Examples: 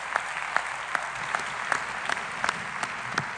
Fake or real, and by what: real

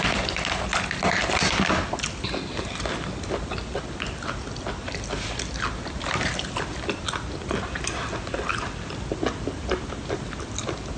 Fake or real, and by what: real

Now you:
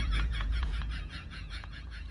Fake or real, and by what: fake, vocoder, Vocos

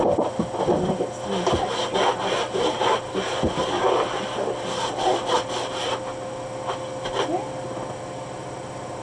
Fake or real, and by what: real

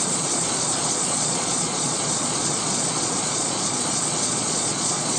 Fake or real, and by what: fake, vocoder, Vocos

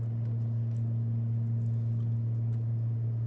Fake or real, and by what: real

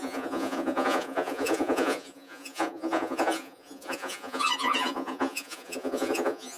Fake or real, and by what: fake, vocoder, Vocos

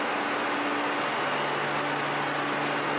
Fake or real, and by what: real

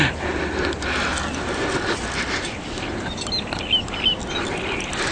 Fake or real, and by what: real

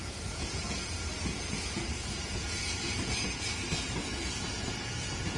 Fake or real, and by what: fake, vocoder, Vocos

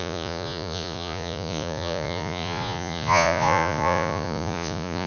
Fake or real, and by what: fake, vocoder, Vocos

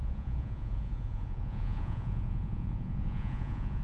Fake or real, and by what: fake, vocoder, Vocos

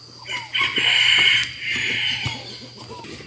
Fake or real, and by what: real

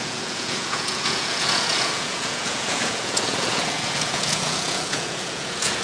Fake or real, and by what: fake, vocoder, Vocos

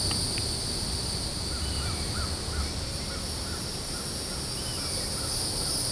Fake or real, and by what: real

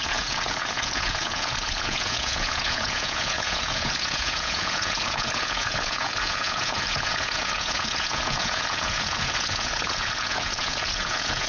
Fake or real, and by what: fake, vocoder, Vocos